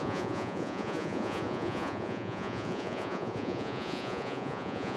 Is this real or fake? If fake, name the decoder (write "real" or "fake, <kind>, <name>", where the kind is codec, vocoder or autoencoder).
fake, vocoder, Vocos